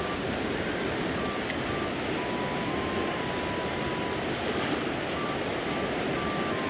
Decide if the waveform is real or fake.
real